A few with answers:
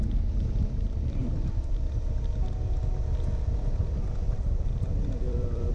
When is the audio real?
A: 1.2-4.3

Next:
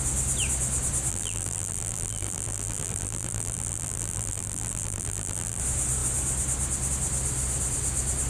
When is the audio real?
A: 0.0-1.1; 5.6-8.3

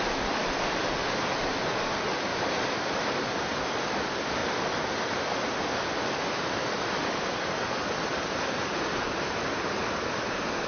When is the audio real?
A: 0.0-0.4; 1.4-2.3; 3.7-4.4; 9.4-10.7

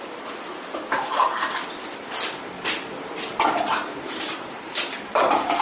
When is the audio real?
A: 1.3-3.6

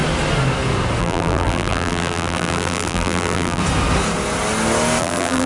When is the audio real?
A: 0.0-1.0; 3.6-5.0

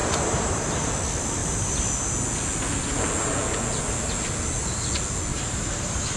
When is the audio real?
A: 0.9-5.3

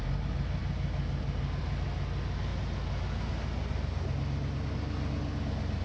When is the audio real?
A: 0.0-5.8